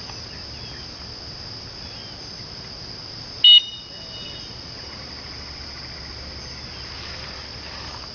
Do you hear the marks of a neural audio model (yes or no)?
no